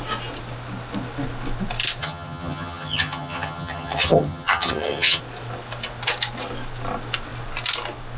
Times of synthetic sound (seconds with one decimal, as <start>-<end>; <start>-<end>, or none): 2.0-5.2